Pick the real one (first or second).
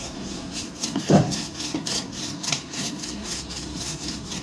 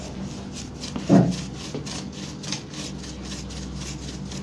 second